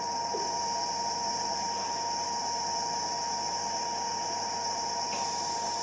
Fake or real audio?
fake